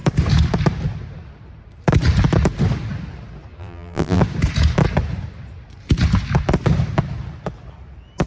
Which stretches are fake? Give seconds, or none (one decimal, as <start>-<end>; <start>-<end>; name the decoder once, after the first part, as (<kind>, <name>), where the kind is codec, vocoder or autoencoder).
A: 3.6-4.2 (vocoder, BigVGAN v2)